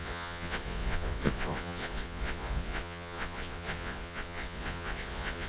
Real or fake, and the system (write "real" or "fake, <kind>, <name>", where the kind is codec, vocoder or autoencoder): fake, vocoder, Vocos